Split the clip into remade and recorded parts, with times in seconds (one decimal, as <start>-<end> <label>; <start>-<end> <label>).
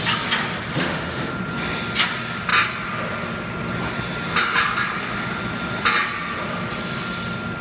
0.0-0.7 recorded; 0.7-1.3 remade; 1.3-7.6 recorded